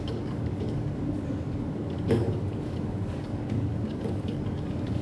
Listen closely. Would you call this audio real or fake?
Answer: fake